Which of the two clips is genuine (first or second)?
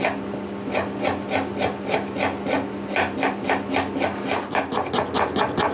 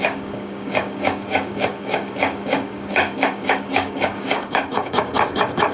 first